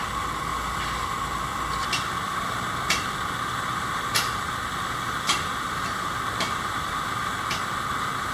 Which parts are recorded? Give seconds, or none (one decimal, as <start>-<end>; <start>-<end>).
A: 0.0-0.5; 1.1-2.3; 7.3-8.3